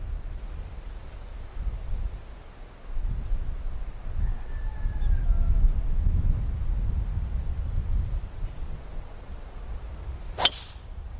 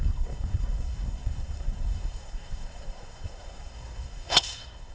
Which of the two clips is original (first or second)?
first